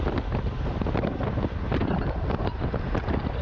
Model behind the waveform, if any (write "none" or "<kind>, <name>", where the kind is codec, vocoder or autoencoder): none